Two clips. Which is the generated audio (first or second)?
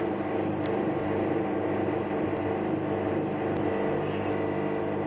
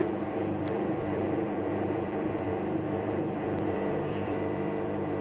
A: second